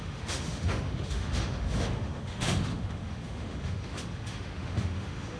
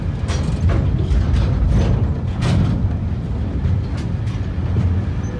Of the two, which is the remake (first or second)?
first